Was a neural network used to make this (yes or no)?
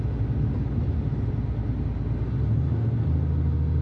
no